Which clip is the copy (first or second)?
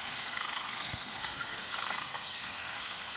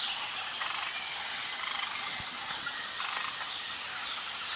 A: first